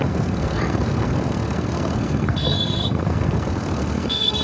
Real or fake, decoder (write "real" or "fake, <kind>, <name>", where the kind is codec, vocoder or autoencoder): fake, codec, SNAC